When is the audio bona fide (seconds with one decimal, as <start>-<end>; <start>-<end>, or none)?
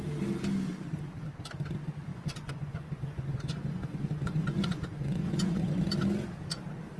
0.0-2.1; 5.8-7.0